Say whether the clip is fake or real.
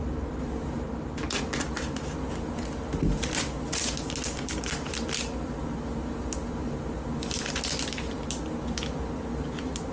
real